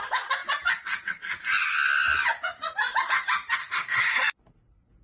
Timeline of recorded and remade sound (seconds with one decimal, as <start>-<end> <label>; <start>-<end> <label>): 0.0-3.6 recorded; 3.6-4.2 remade; 4.2-5.0 recorded